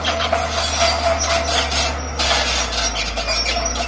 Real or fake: real